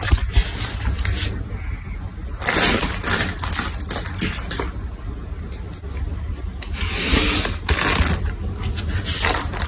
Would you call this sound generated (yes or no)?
no